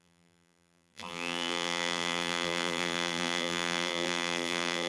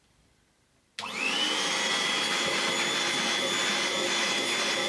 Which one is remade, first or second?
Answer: first